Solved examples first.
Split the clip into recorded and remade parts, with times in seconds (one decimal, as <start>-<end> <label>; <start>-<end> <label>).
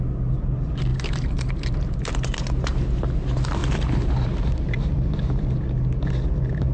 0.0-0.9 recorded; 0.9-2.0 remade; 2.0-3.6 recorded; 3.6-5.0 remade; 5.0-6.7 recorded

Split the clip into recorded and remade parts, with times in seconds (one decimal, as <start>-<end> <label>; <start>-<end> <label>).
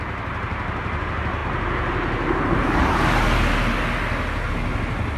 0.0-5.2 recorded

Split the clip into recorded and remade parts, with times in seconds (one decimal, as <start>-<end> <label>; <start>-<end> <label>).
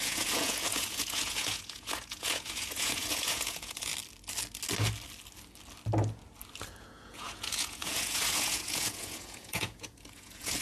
0.0-3.9 remade; 3.9-6.8 recorded; 6.8-10.6 remade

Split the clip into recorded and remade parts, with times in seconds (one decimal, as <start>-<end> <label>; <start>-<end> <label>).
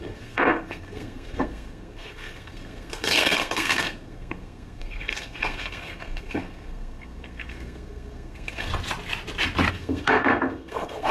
0.0-8.7 remade; 8.7-9.7 recorded; 9.7-11.1 remade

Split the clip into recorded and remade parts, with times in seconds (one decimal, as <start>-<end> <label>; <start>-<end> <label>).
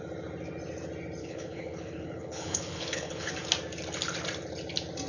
0.0-1.2 recorded; 1.2-3.3 remade; 3.3-5.1 recorded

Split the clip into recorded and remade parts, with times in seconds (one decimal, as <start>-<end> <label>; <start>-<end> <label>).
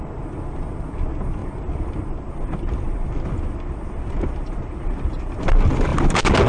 0.0-1.4 recorded; 1.4-5.3 remade; 5.3-5.9 recorded; 5.9-6.5 remade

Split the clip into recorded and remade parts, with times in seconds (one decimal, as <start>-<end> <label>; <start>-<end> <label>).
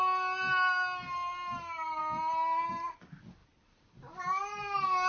0.0-5.1 recorded